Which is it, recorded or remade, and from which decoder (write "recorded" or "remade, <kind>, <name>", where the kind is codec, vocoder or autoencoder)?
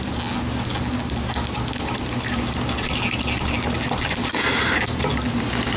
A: recorded